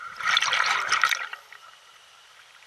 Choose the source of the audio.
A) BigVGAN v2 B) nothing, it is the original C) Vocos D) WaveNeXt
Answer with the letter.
B